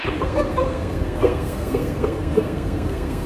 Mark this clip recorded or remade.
remade